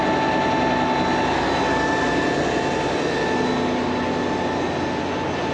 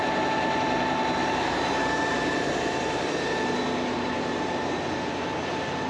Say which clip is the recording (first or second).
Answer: first